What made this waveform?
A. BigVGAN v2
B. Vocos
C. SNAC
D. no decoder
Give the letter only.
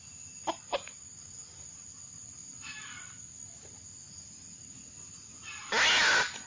D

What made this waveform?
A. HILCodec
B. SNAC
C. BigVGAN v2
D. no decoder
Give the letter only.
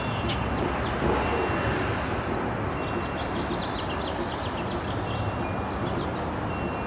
D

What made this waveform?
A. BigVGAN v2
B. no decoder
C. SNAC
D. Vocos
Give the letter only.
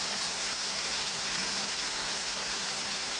C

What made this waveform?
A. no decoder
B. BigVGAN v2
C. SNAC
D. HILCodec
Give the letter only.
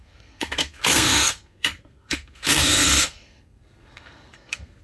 C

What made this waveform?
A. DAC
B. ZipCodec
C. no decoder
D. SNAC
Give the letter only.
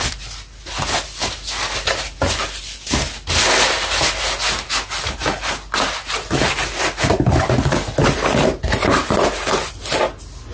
C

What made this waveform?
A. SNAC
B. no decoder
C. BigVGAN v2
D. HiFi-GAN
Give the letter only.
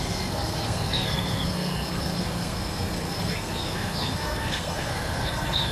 A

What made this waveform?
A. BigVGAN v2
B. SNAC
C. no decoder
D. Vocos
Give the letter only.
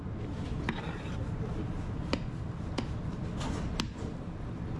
C